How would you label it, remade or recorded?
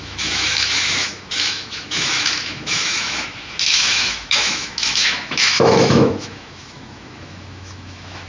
remade